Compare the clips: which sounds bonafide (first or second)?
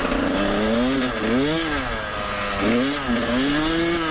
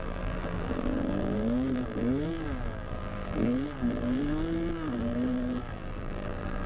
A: first